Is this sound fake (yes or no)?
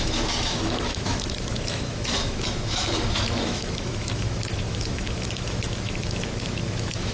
yes